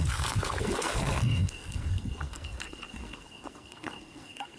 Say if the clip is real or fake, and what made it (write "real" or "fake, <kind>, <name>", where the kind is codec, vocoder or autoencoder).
fake, codec, SNAC